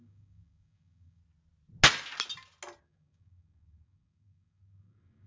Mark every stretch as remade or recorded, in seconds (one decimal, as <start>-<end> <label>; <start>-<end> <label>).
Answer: 0.0-1.2 remade; 1.2-2.8 recorded; 2.8-5.3 remade